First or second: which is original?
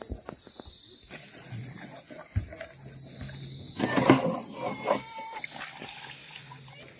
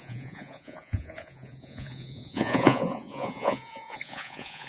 first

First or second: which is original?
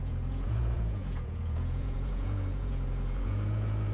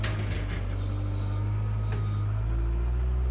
second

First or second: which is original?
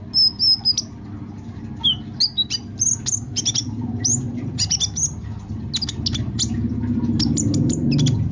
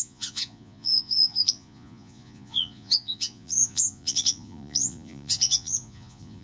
first